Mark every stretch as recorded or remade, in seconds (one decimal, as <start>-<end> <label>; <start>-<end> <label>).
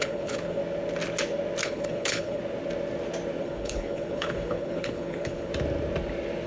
0.0-0.6 remade; 0.6-1.6 recorded; 1.6-2.4 remade; 2.4-3.4 recorded; 3.4-5.5 remade; 5.5-6.5 recorded